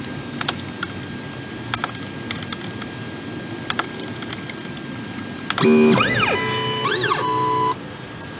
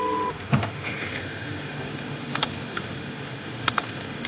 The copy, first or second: second